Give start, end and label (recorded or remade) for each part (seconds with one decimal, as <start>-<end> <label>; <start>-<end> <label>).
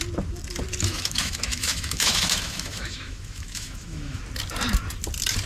0.0-0.9 recorded; 0.9-4.2 remade; 4.2-5.5 recorded